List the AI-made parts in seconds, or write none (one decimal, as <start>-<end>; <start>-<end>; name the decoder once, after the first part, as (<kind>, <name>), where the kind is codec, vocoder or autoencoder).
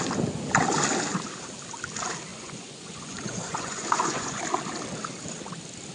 2.3-4.4 (vocoder, Vocos)